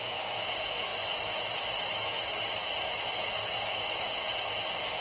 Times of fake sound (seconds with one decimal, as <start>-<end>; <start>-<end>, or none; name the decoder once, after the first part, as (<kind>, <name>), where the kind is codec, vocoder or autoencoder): 0.0-5.0 (autoencoder, DAC-VAE)